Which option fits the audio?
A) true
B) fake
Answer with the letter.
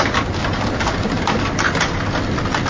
A